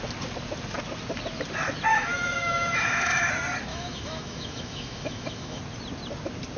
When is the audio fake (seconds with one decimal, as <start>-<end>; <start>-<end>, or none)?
1.9-3.3; 3.7-5.6